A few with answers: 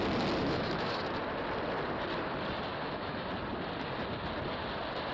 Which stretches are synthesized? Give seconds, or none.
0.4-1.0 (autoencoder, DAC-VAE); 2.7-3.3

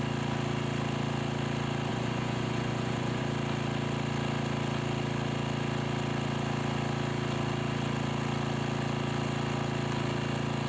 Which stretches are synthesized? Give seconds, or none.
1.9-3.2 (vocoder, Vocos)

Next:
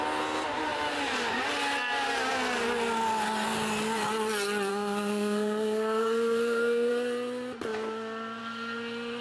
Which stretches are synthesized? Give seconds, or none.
4.7-6.9 (codec, SNAC)

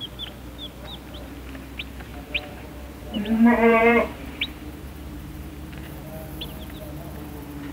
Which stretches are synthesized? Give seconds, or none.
2.1-2.6 (vocoder, BigVGAN v2); 3.0-6.0